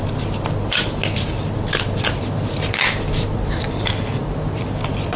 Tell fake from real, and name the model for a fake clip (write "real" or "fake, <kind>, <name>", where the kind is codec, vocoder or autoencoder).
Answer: real